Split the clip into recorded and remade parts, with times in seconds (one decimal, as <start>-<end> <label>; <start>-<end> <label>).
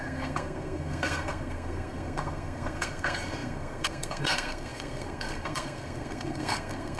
0.0-7.0 remade